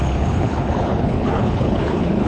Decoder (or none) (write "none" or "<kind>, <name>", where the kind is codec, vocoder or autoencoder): codec, HILCodec